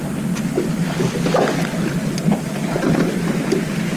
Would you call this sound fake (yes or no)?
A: no